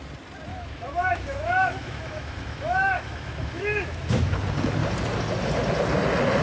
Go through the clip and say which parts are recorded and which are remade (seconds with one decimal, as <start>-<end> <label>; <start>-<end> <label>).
0.0-0.5 recorded; 0.5-4.3 remade; 4.3-6.4 recorded

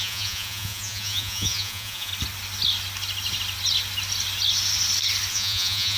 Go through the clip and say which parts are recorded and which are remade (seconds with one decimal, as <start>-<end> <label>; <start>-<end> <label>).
0.0-2.1 remade; 2.1-5.3 recorded; 5.3-6.0 remade

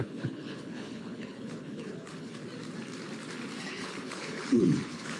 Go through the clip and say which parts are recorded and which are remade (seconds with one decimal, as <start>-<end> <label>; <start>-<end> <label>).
0.0-2.4 remade; 2.4-3.6 recorded; 3.6-5.2 remade